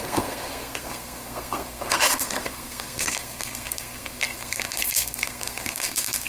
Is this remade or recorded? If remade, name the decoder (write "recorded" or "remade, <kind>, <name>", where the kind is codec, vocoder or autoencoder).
remade, codec, SNAC